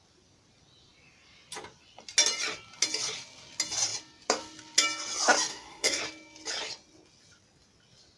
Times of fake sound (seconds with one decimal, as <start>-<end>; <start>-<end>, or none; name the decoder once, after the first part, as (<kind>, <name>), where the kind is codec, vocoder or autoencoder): 5.5-6.0 (codec, SNAC)